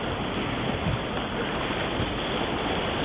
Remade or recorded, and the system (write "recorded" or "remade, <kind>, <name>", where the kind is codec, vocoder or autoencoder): recorded